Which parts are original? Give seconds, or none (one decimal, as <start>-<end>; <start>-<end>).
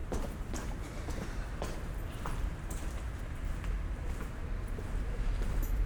none